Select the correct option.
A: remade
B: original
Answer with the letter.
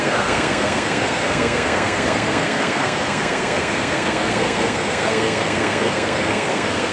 A